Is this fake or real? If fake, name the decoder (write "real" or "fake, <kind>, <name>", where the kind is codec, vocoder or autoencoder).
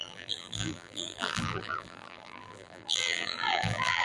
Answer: fake, vocoder, BigVGAN v2